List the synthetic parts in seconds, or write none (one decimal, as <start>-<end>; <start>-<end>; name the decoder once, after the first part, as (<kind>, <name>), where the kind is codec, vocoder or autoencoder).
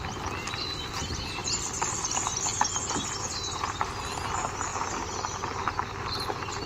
1.4-2.1 (vocoder, BigVGAN v2); 2.5-4.3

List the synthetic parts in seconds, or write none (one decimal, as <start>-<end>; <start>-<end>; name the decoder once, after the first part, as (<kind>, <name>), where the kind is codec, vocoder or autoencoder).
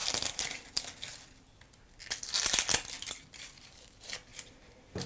3.1-5.1 (vocoder, BigVGAN v2)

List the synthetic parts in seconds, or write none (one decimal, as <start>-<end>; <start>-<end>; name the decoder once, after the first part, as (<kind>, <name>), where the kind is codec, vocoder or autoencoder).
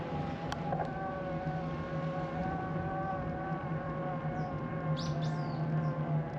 2.4-4.7 (vocoder, BigVGAN v2)